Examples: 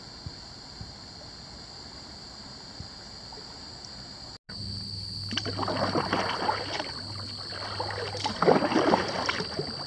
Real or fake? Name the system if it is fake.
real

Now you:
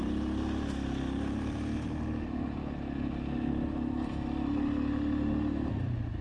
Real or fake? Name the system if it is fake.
real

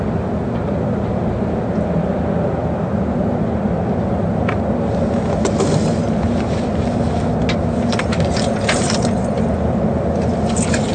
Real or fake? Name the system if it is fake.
real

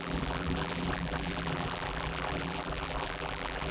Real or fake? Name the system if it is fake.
fake, vocoder, BigVGAN v2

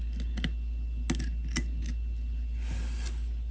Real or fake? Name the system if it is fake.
real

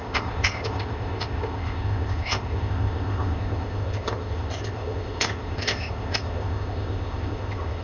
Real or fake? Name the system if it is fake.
fake, codec, ZipCodec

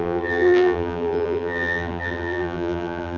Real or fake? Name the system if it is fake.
fake, vocoder, BigVGAN v2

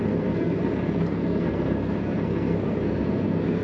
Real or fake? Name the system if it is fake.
fake, codec, SNAC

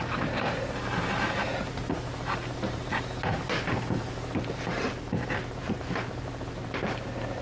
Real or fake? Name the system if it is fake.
fake, vocoder, BigVGAN v2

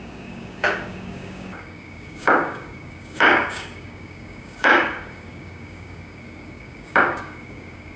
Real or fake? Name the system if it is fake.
fake, codec, DAC